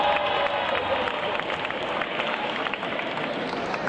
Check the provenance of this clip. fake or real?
real